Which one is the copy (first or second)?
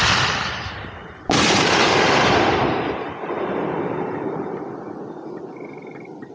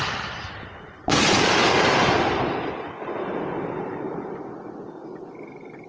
first